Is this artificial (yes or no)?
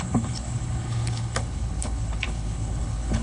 yes